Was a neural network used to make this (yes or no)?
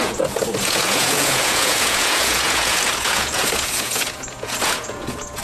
yes